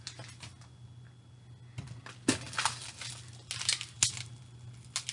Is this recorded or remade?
recorded